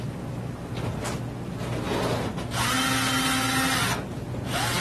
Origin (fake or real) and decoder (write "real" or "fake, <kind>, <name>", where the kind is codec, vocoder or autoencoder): real